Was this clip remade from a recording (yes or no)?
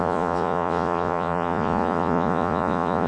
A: yes